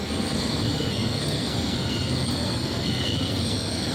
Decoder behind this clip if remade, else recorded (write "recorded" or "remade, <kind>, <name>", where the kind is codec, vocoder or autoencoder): remade, codec, SNAC